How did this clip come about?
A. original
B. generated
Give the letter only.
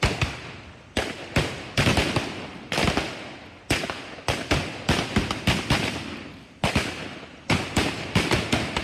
A